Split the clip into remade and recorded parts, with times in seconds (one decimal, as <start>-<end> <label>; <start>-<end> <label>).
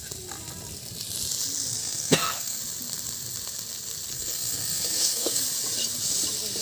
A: 0.0-1.8 recorded; 1.8-2.6 remade; 2.6-4.1 recorded; 4.1-5.4 remade; 5.4-6.6 recorded